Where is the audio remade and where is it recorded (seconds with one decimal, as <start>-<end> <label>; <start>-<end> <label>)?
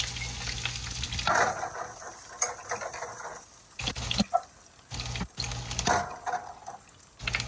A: 0.0-7.5 recorded